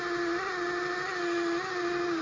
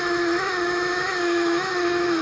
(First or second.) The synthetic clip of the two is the second